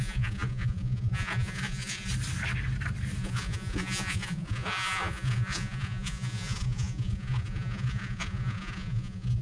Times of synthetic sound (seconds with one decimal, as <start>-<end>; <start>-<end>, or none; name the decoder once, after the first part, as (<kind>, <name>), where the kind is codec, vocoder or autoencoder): 0.0-2.1 (vocoder, Vocos); 3.2-9.4